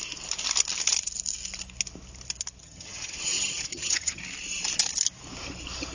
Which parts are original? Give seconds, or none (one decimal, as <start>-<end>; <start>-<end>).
0.0-2.6; 4.2-5.9